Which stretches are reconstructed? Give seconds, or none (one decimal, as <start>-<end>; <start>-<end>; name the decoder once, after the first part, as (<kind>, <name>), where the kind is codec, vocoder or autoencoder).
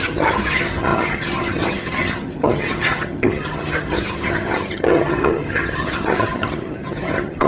0.0-7.5 (vocoder, HiFi-GAN)